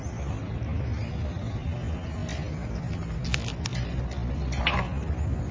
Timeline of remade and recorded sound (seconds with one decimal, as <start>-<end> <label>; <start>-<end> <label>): 0.0-5.5 recorded